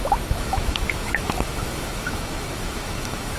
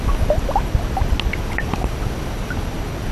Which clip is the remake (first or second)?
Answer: first